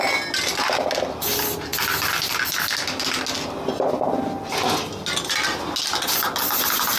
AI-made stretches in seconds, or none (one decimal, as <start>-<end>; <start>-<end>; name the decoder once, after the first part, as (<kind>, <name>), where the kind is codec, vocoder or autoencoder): none